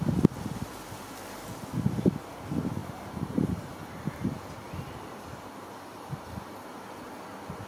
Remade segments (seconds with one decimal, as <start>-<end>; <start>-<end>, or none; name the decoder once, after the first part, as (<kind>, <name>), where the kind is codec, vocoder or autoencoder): 2.8-6.9 (vocoder, BigVGAN v2)